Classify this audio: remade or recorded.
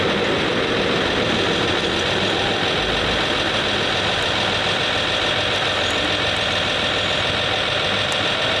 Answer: recorded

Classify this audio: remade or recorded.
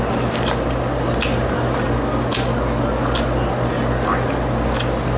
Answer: recorded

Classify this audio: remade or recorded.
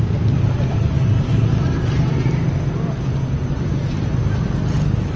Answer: recorded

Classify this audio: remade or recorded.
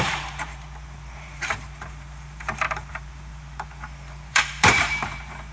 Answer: remade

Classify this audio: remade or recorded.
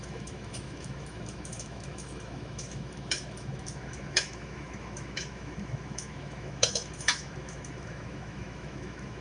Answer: remade